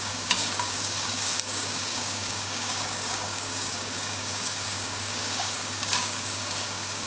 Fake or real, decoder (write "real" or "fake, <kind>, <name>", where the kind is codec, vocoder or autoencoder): fake, codec, DAC